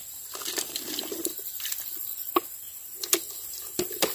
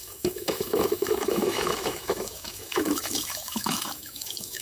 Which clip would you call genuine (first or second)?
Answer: first